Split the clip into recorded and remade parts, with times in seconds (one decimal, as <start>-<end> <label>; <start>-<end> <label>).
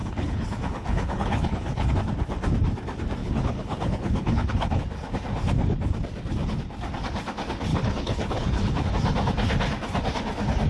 0.0-1.9 remade; 1.9-3.2 recorded; 3.2-4.8 remade; 4.8-7.7 recorded; 7.7-8.9 remade; 8.9-10.7 recorded